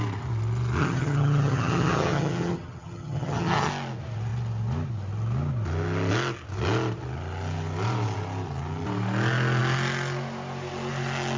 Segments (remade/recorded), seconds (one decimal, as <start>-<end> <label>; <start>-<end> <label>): 0.0-0.8 recorded; 0.8-3.7 remade; 3.7-11.4 recorded